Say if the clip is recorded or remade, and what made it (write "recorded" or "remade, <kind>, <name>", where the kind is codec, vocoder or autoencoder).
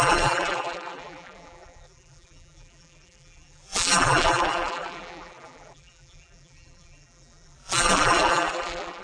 remade, vocoder, BigVGAN v2